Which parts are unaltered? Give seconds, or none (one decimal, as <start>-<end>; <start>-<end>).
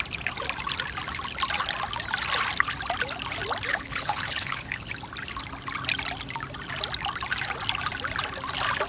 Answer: 0.0-3.7; 4.9-8.9